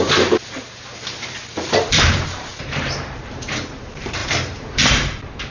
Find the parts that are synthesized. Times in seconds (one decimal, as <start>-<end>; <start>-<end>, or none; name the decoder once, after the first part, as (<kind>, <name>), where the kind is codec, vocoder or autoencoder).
0.0-5.5 (vocoder, BigVGAN v2)